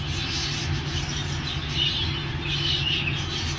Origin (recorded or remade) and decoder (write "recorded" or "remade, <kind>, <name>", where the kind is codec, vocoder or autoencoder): recorded